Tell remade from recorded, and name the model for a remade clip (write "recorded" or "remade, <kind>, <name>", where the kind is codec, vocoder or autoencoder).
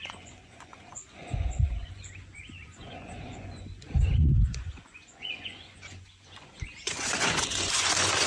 remade, vocoder, Vocos